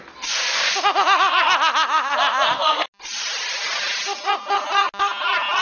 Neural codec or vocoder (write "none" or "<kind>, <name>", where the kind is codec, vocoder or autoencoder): none